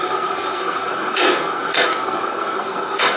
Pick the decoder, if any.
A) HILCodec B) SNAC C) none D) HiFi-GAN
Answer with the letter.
B